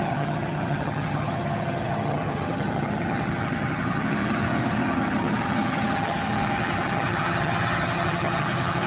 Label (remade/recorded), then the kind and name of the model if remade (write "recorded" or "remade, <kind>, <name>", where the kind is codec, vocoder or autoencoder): remade, vocoder, HiFi-GAN